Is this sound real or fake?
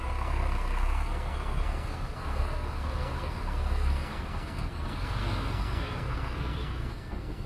fake